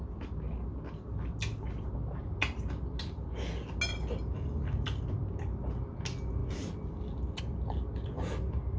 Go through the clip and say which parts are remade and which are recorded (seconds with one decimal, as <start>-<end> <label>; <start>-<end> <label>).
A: 0.0-8.8 recorded